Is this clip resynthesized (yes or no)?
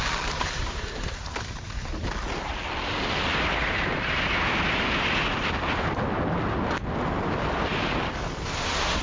no